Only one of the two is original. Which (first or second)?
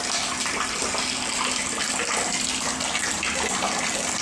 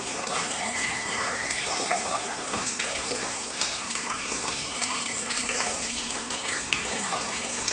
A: first